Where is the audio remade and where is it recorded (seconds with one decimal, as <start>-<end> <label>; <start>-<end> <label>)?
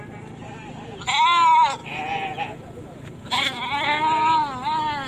0.0-1.8 recorded; 1.8-3.4 remade; 3.4-5.1 recorded